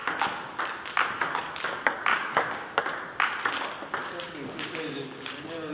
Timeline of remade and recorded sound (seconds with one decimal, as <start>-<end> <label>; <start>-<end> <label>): 0.0-2.1 recorded; 2.1-2.8 remade; 2.8-4.0 recorded; 4.0-5.7 remade